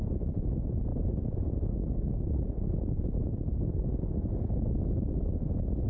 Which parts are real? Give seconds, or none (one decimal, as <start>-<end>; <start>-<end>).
0.0-5.9